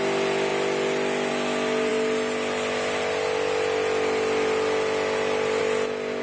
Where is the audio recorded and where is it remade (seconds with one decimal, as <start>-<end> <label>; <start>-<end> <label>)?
0.0-6.2 recorded